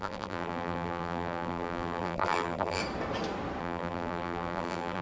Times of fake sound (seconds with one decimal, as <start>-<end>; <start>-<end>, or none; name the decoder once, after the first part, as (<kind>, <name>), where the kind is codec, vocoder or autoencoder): 0.0-2.8 (vocoder, BigVGAN v2); 3.6-5.0